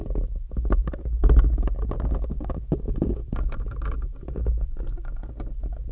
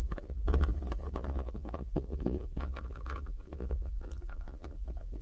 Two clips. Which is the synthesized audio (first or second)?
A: second